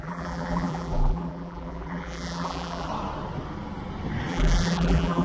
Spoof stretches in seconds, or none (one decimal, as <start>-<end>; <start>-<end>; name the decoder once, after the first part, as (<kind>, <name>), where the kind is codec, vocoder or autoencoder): 0.0-2.9 (vocoder, BigVGAN v2); 4.3-5.2